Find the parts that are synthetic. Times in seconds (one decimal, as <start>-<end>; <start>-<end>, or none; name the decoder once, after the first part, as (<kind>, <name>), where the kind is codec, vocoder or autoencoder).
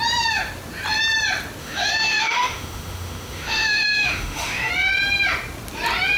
1.6-4.7 (autoencoder, DAC-VAE)